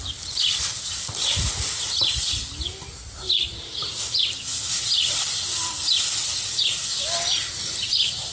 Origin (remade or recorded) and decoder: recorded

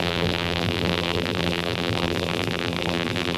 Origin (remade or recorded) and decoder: remade, vocoder, BigVGAN v2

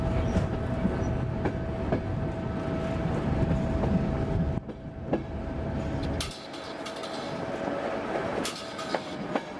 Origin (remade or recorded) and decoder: recorded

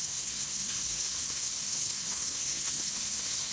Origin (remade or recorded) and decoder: remade, codec, SNAC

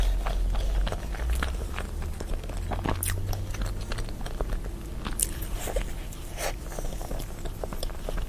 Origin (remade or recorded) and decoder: recorded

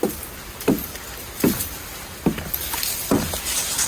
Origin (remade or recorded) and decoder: recorded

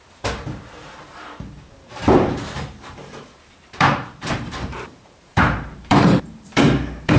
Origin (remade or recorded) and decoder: remade, vocoder, BigVGAN v2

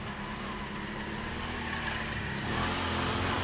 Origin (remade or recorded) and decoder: recorded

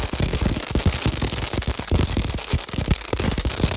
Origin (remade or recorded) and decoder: remade, codec, SNAC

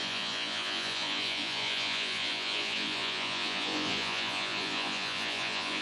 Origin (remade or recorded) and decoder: remade, vocoder, Vocos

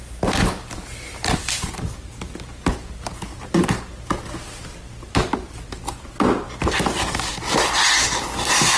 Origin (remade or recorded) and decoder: recorded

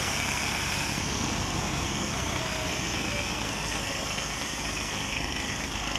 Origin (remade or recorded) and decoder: remade, codec, SNAC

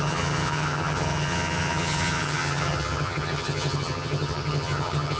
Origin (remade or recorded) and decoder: remade, vocoder, HiFi-GAN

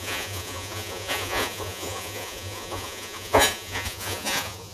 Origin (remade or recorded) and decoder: remade, vocoder, Vocos